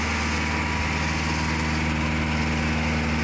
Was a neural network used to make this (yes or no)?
no